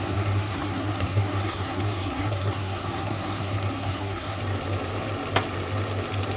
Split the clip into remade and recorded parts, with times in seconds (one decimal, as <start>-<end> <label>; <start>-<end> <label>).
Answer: 0.0-4.4 remade; 4.4-6.4 recorded